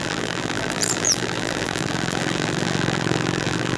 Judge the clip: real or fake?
fake